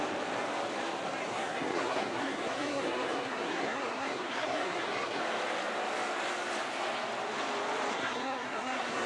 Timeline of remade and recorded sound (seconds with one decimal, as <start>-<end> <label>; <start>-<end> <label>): 0.0-1.3 recorded; 1.3-5.2 remade; 5.2-7.9 recorded; 7.9-9.1 remade